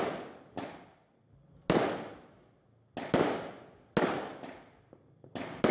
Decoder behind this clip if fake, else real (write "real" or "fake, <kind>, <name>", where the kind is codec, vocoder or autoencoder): real